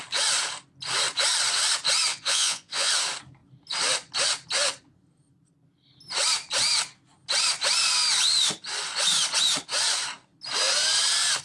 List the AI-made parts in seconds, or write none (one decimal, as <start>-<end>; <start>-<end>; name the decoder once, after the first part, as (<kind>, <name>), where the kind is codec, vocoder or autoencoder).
2.1-2.9 (vocoder, Vocos)